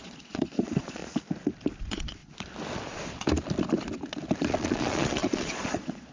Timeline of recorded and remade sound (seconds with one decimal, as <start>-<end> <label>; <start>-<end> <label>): 0.0-1.0 remade; 1.0-1.8 recorded; 1.8-2.2 remade; 2.2-4.4 recorded; 4.4-6.1 remade